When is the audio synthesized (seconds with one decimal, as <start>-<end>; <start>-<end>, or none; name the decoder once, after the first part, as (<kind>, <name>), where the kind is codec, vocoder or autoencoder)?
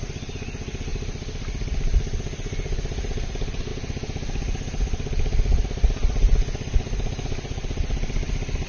none